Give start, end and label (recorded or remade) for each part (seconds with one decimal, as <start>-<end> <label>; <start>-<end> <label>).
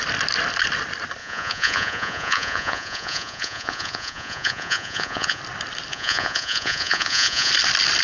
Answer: 0.0-1.2 recorded; 1.2-5.4 remade; 5.4-5.9 recorded; 5.9-7.5 remade; 7.5-8.0 recorded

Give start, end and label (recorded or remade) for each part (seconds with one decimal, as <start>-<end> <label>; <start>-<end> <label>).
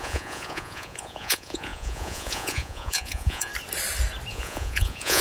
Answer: 0.0-3.5 remade; 3.5-4.3 recorded; 4.3-5.2 remade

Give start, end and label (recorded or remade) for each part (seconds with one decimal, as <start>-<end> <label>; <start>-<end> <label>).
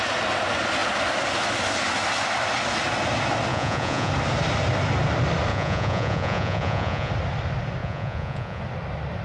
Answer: 0.0-3.5 recorded; 3.5-4.1 remade; 4.1-5.5 recorded; 5.5-7.1 remade; 7.1-7.8 recorded; 7.8-8.6 remade; 8.6-9.2 recorded